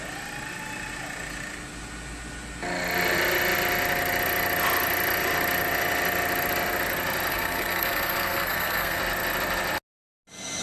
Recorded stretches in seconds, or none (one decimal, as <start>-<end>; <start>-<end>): 0.0-7.3; 9.0-10.6